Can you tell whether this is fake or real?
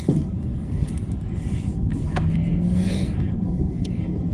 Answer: fake